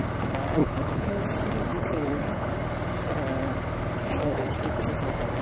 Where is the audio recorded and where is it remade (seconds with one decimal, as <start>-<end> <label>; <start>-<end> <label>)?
0.0-0.6 recorded; 0.6-1.2 remade; 1.2-1.7 recorded; 1.7-2.5 remade; 2.5-4.2 recorded; 4.2-4.8 remade; 4.8-5.4 recorded